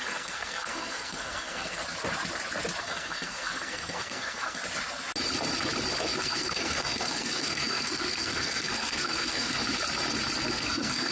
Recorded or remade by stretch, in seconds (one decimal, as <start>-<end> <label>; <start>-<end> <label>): 0.0-1.8 remade; 1.8-2.8 recorded; 2.8-4.6 remade; 4.6-6.2 recorded; 6.2-9.6 remade; 9.6-10.5 recorded; 10.5-11.1 remade